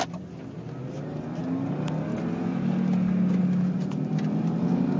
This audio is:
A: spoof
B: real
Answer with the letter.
B